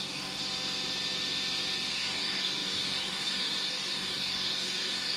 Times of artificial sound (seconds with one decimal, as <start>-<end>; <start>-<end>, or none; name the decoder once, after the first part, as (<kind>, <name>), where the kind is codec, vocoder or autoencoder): 0.0-0.4 (codec, DAC); 1.9-5.2